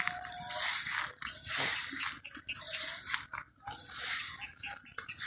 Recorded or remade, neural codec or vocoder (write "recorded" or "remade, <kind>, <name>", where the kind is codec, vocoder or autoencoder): recorded